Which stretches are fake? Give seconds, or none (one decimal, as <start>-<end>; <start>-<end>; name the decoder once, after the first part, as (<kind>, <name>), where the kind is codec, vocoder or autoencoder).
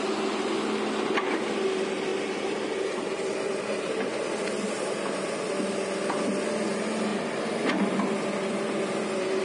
none